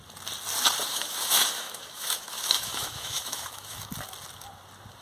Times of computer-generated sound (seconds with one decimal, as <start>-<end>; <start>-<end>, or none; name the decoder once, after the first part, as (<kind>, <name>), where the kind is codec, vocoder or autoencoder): 0.9-3.9 (autoencoder, DAC-VAE)